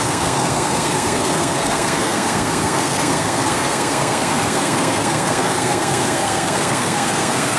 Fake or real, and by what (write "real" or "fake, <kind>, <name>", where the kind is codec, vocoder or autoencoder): fake, codec, SNAC